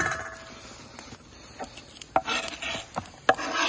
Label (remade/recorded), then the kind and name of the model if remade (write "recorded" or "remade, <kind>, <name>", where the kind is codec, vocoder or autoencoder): recorded